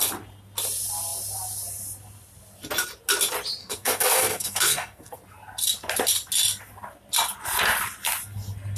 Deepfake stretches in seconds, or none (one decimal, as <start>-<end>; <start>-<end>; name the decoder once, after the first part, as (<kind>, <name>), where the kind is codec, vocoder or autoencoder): 3.6-5.2 (codec, SNAC)